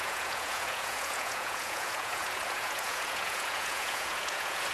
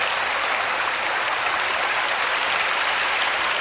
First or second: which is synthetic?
first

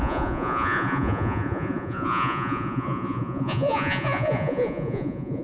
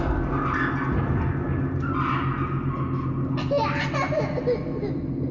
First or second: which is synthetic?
first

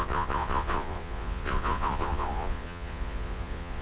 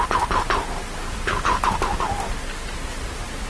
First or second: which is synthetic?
first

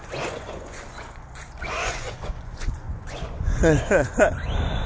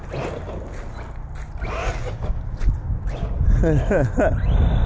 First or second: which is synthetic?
first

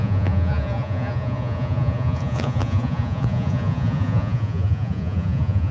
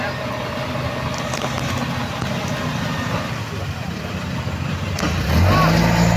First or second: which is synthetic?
first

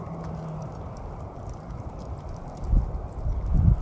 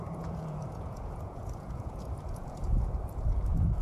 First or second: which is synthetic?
second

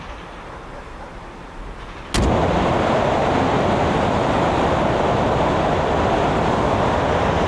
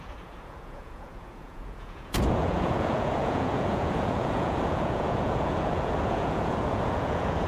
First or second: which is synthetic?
second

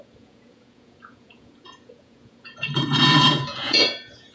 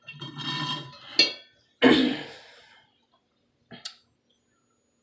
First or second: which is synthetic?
first